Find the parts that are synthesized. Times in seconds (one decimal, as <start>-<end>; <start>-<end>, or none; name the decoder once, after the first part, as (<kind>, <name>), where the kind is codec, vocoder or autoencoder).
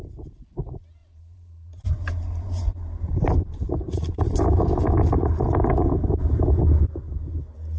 1.0-5.5 (vocoder, BigVGAN v2)